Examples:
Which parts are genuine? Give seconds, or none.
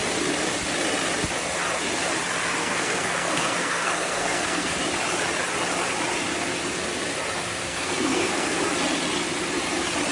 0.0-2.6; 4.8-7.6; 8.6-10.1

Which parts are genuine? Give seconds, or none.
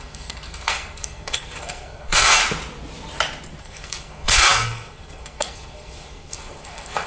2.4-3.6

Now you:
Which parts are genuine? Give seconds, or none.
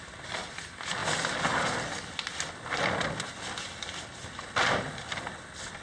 0.0-5.8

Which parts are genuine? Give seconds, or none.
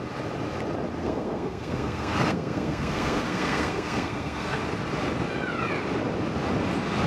0.0-1.0; 4.6-7.1